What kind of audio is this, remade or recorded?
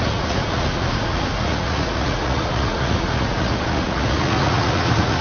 remade